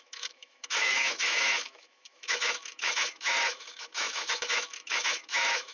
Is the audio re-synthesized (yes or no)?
yes